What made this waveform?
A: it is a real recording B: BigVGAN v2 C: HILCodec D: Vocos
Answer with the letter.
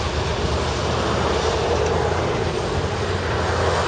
A